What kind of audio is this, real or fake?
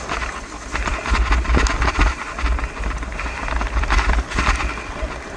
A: real